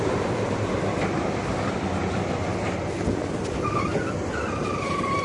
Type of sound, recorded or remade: recorded